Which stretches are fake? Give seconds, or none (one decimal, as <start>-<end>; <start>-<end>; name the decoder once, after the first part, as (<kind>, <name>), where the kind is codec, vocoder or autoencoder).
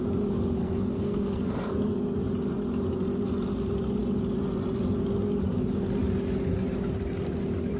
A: 0.6-2.0 (codec, SNAC)